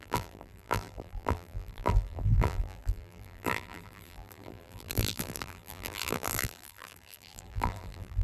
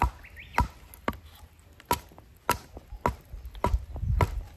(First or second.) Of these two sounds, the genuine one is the second